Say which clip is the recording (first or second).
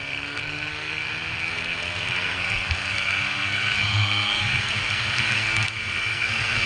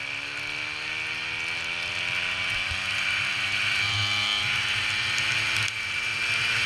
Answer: second